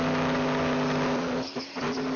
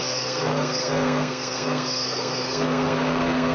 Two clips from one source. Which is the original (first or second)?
first